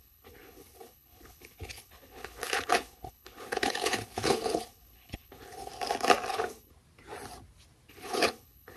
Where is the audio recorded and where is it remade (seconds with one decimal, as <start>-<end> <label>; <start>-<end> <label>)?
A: 0.0-5.7 remade; 5.7-6.3 recorded; 6.3-6.7 remade; 6.7-7.9 recorded; 7.9-8.8 remade